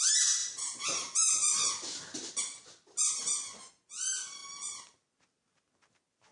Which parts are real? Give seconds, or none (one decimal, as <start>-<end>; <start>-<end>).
0.0-3.2; 3.7-6.3